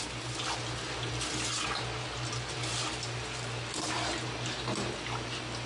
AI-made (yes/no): no